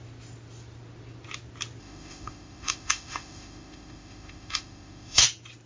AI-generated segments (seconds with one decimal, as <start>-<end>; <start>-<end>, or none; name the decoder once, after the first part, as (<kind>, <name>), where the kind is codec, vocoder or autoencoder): 1.8-5.2 (autoencoder, DAC-VAE)